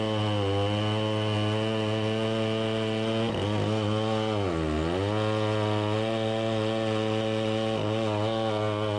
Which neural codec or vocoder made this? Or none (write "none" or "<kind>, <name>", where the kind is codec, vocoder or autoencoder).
none